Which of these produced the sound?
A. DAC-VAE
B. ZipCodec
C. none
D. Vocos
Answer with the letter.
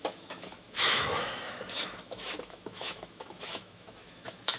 A